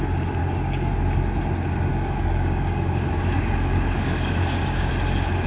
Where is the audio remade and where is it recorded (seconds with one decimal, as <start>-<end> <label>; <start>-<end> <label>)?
0.0-0.4 recorded; 0.4-0.9 remade; 0.9-1.9 recorded; 1.9-4.9 remade; 4.9-5.5 recorded